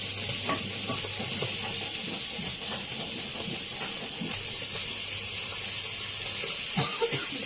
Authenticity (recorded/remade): recorded